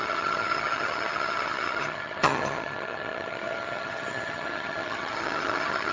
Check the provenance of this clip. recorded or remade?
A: remade